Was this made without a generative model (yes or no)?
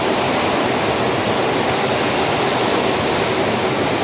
yes